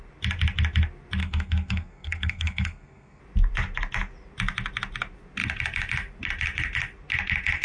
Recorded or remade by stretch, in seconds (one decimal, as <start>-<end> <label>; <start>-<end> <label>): 0.0-1.2 recorded; 1.2-3.2 remade; 3.2-7.6 recorded